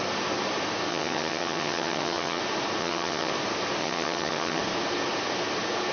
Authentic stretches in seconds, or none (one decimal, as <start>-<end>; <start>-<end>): 0.0-0.9; 2.4-2.8; 3.3-3.8; 4.6-5.9